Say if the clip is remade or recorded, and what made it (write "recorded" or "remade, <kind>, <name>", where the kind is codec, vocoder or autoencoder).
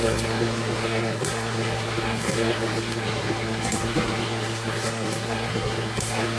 remade, codec, SNAC